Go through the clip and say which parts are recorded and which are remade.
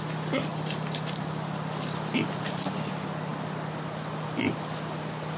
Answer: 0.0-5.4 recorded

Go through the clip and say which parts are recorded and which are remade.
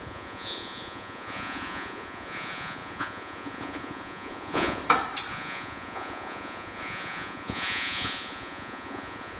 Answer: 0.0-4.8 remade; 4.8-5.3 recorded; 5.3-9.4 remade